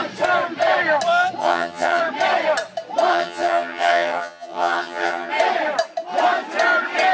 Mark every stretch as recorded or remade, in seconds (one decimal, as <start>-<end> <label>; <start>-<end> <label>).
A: 0.0-1.4 recorded; 1.4-2.0 remade; 2.0-3.1 recorded; 3.1-5.3 remade; 5.3-7.1 recorded